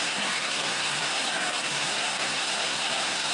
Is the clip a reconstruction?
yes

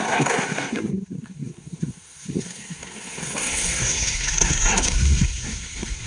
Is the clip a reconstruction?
yes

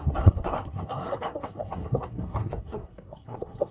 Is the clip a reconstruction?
yes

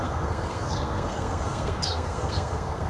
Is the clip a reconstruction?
yes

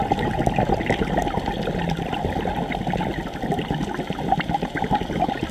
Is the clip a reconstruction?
no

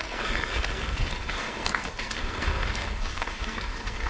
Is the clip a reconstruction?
yes